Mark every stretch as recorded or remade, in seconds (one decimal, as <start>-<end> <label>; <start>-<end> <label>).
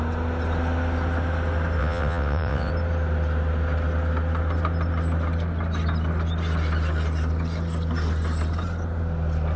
0.0-1.8 recorded; 1.8-2.7 remade; 2.7-9.6 recorded